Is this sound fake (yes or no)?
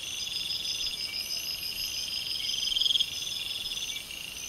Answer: no